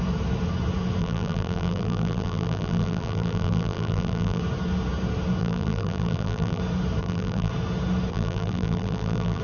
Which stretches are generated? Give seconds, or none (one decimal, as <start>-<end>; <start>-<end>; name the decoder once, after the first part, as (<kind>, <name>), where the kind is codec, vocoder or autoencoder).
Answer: 1.0-4.4 (vocoder, BigVGAN v2); 5.4-6.6; 7.0-7.5; 8.1-9.4